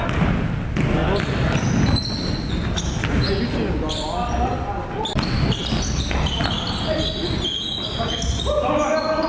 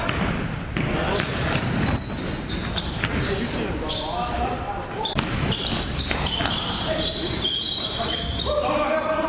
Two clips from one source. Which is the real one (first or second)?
first